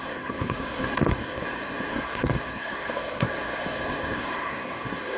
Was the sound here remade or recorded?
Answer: remade